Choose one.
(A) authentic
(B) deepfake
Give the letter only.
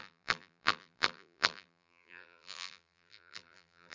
B